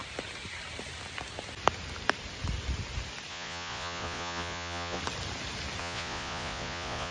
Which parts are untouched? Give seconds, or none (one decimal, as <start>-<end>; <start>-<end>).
0.0-3.3; 5.0-5.8